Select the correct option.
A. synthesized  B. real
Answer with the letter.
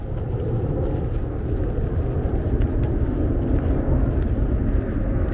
B